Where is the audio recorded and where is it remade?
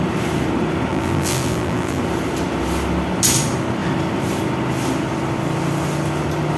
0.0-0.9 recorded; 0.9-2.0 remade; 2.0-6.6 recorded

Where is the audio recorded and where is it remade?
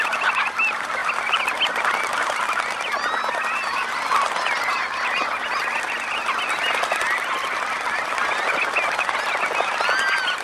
0.0-10.4 recorded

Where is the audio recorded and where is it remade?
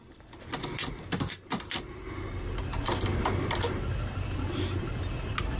0.0-2.7 recorded; 2.7-3.2 remade; 3.2-5.6 recorded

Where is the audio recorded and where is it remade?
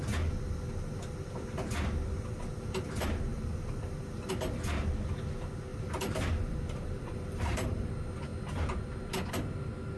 0.0-3.3 recorded; 3.3-4.3 remade; 4.3-5.7 recorded; 5.7-7.9 remade; 7.9-10.0 recorded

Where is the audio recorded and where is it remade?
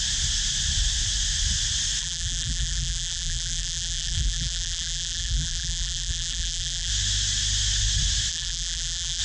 0.0-2.0 recorded; 2.0-6.9 remade; 6.9-8.3 recorded; 8.3-9.2 remade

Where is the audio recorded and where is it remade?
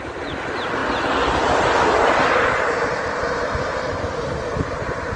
0.0-0.8 remade; 0.8-2.6 recorded; 2.6-3.2 remade; 3.2-4.3 recorded; 4.3-5.2 remade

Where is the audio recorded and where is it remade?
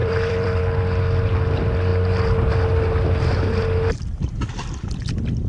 0.0-0.6 remade; 0.6-5.5 recorded